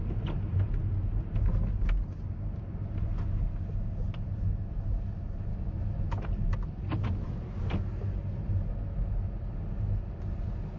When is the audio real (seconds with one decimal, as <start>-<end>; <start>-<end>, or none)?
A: 0.0-5.5; 6.2-10.8